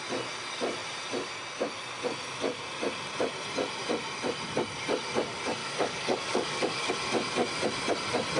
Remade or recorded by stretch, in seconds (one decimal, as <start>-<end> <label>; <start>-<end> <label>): 0.0-5.6 recorded; 5.6-6.9 remade; 6.9-8.4 recorded